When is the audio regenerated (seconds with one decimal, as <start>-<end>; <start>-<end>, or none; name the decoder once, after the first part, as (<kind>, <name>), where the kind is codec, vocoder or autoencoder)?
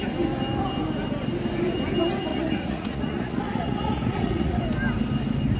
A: 2.3-4.6 (vocoder, Vocos)